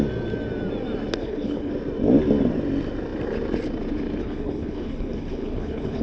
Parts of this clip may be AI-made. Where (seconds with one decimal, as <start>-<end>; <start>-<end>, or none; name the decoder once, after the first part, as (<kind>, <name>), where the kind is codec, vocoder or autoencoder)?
1.2-1.7 (codec, HILCodec); 4.2-6.0